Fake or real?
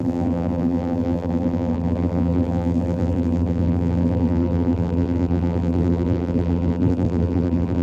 fake